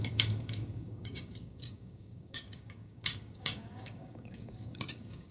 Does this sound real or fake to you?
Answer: fake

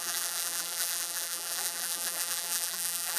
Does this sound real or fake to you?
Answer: fake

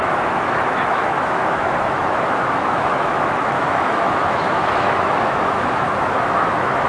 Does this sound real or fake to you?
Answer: fake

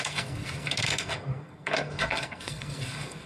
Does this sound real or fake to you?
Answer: fake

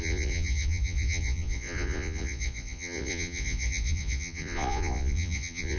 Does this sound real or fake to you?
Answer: fake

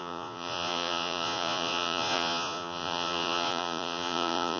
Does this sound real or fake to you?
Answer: fake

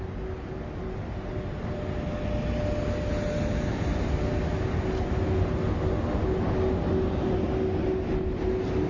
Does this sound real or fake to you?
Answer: real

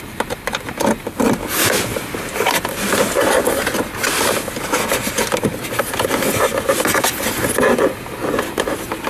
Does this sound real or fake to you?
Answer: real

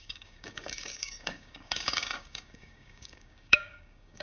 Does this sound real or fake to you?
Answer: fake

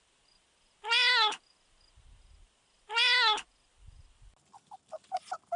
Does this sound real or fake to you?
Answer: real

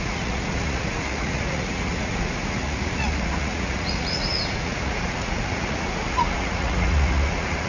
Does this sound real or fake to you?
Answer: fake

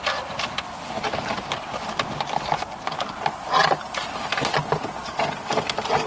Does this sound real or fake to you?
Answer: real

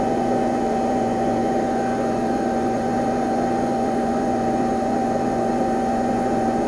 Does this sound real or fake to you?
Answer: fake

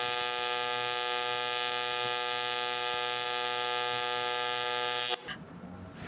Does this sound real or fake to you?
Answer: real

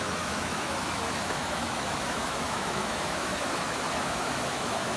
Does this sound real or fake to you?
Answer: fake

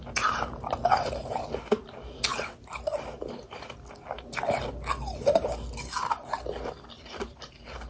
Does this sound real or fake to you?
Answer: real